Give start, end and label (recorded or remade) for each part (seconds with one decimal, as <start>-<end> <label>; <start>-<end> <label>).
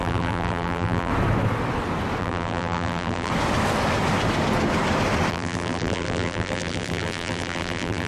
0.0-1.1 remade; 1.1-2.2 recorded; 2.2-3.3 remade; 3.3-5.3 recorded; 5.3-8.1 remade